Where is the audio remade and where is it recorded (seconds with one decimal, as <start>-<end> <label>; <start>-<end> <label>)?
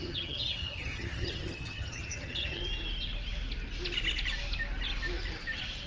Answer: 0.0-2.6 remade; 2.6-5.9 recorded